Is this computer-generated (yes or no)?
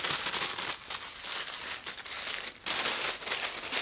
no